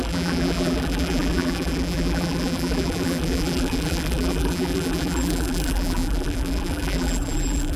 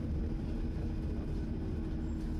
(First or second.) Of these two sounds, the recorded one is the second